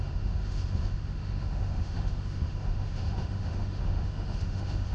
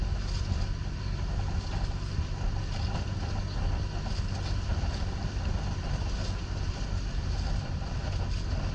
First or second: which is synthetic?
first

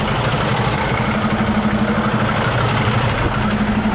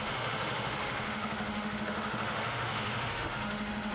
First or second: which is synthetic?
second